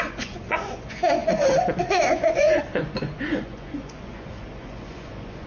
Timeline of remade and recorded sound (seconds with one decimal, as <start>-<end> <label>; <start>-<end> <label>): 0.0-5.5 remade